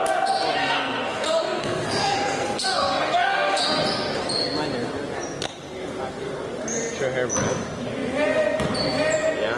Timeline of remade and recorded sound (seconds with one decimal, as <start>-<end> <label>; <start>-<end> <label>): 0.0-0.6 recorded; 0.6-3.6 remade; 3.6-9.6 recorded